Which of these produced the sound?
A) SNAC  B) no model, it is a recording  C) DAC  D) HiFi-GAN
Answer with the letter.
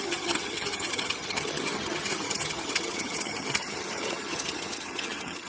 D